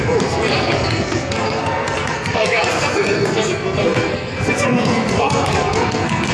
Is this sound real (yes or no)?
no